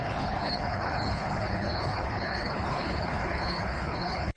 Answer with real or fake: fake